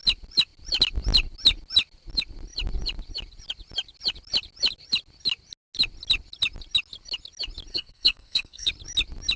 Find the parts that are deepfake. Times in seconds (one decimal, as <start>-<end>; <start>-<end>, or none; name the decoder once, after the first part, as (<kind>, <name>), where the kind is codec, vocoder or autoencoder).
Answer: 7.7-8.7 (codec, SNAC)

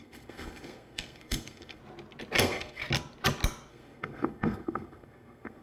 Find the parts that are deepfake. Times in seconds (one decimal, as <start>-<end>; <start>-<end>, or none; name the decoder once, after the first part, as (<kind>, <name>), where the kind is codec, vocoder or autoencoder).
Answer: 0.0-1.8 (codec, SNAC); 2.4-2.8; 3.7-5.6

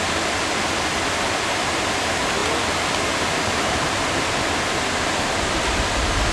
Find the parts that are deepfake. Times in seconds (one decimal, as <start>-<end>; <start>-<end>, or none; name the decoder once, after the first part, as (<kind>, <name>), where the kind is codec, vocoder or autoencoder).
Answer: none

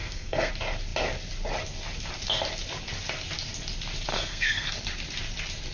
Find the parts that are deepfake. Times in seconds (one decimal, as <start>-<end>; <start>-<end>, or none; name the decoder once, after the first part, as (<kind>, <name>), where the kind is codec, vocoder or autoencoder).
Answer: 0.0-0.5 (codec, SNAC); 4.1-4.7